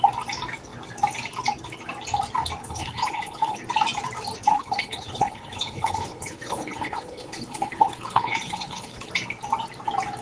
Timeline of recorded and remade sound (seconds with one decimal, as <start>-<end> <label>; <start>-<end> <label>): 0.0-2.6 recorded; 2.6-3.6 remade; 3.6-4.5 recorded; 4.5-9.1 remade; 9.1-10.2 recorded